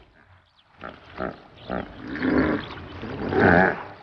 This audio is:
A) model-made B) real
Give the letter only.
B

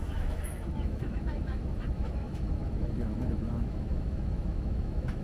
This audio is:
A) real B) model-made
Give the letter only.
B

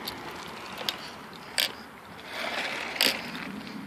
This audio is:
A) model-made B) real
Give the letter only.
B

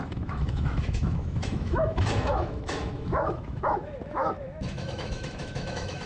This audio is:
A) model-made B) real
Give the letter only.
A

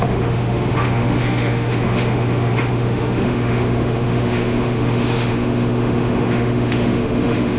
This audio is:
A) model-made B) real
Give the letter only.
A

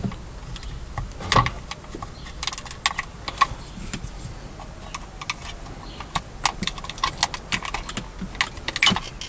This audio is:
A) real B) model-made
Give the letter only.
A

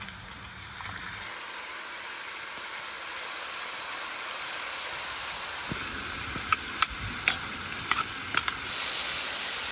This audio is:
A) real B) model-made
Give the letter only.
A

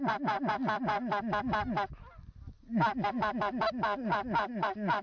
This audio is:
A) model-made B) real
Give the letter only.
B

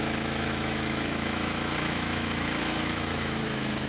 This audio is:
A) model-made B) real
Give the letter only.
A